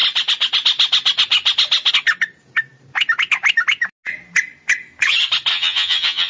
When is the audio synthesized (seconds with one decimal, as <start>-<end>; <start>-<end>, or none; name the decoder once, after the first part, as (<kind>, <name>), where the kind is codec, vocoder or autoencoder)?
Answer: 5.5-6.3 (vocoder, HiFi-GAN)